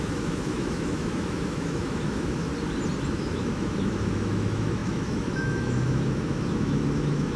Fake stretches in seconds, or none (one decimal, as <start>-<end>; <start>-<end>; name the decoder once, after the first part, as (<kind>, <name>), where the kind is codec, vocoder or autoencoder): 0.0-2.5 (autoencoder, DAC-VAE); 3.1-7.4

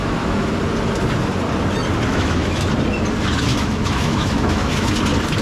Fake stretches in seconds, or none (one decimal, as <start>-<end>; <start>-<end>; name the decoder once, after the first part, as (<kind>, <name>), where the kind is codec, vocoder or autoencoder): 0.0-0.5 (autoencoder, DAC-VAE); 2.1-2.7; 3.5-4.9

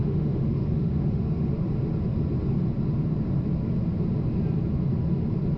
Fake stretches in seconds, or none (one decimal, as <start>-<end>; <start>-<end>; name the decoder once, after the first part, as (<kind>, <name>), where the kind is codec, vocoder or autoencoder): 0.0-1.5 (autoencoder, DAC-VAE)

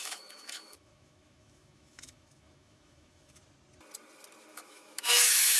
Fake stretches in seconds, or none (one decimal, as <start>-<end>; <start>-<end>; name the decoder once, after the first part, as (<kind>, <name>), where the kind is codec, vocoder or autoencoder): 0.0-3.4 (autoencoder, DAC-VAE); 4.5-5.6

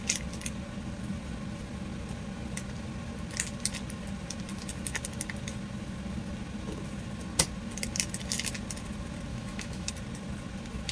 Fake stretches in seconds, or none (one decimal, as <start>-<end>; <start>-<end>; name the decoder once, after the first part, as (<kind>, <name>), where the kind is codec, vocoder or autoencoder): 9.3-9.9 (autoencoder, DAC-VAE)

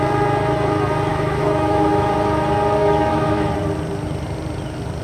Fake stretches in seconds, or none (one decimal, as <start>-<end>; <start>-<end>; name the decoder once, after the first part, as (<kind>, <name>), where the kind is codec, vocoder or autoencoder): 1.1-2.1 (autoencoder, DAC-VAE); 2.8-3.5

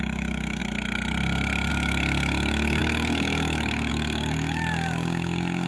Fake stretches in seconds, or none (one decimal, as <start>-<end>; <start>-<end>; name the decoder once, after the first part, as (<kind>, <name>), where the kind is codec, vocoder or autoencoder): 0.0-0.6 (autoencoder, DAC-VAE); 1.7-5.7